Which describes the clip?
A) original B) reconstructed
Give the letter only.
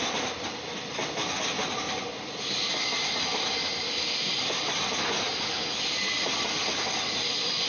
A